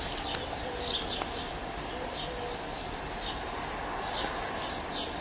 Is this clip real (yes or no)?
yes